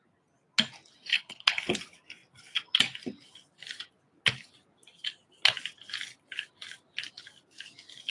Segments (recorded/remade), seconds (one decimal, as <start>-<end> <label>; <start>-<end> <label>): 0.0-1.1 recorded; 1.1-1.7 remade; 1.7-8.1 recorded